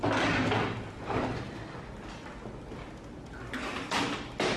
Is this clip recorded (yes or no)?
yes